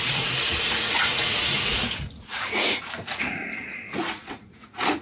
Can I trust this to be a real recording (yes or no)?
no